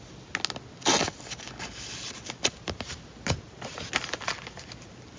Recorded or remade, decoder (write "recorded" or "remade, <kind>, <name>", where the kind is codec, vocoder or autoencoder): recorded